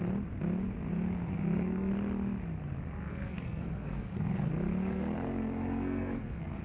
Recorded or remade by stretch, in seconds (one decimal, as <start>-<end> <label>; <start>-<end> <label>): 0.0-1.3 recorded; 1.3-1.9 remade; 1.9-3.1 recorded; 3.1-6.6 remade